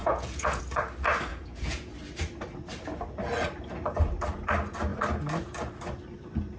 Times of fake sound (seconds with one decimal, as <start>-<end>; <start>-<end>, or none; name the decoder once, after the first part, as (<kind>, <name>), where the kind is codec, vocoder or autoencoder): 0.0-0.6 (vocoder, Vocos); 1.3-1.9